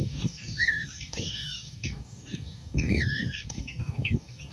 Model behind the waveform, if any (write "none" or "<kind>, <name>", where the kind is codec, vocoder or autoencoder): codec, DAC